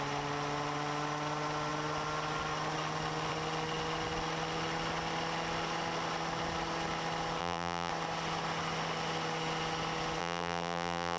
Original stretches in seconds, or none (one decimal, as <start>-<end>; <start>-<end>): 0.0-7.4; 7.9-10.2